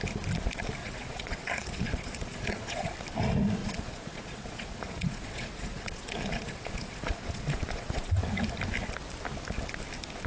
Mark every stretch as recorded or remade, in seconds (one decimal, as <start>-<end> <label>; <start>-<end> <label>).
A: 0.0-0.8 recorded; 0.8-2.9 remade; 2.9-3.6 recorded; 3.6-8.1 remade; 8.1-10.3 recorded